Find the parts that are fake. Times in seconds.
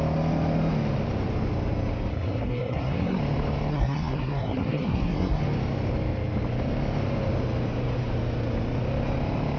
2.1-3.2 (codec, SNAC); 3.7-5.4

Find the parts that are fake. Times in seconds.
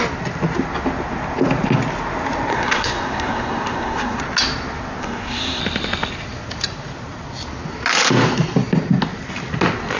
2.5-4.2 (codec, SNAC); 5.0-5.6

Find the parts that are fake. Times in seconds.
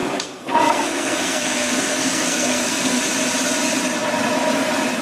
0.0-3.0 (codec, SNAC)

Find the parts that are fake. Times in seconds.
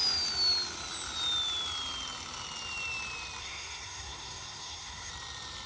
3.4-5.1 (codec, SNAC)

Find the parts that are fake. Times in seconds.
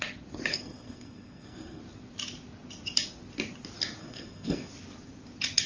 0.5-1.8 (codec, SNAC); 4.0-4.7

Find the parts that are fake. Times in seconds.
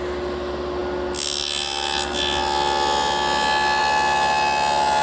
none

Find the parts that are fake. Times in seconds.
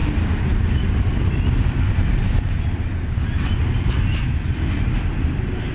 none